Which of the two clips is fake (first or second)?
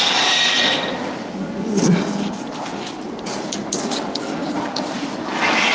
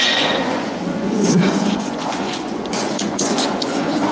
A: second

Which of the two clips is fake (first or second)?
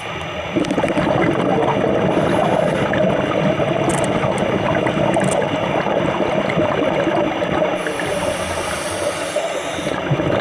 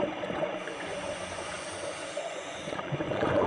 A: second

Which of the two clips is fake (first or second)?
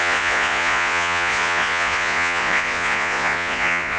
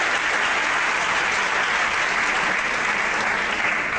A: first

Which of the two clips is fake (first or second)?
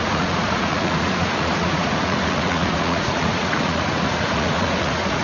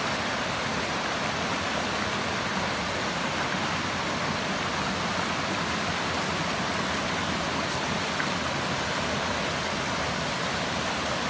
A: first